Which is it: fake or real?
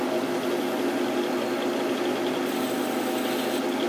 real